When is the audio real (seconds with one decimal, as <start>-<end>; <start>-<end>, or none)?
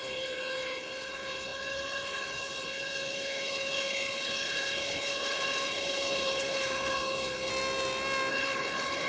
7.5-8.3